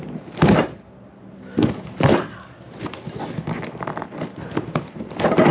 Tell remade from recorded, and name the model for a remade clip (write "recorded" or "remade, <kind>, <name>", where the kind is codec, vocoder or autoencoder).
recorded